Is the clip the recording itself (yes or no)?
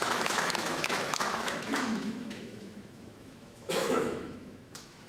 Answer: no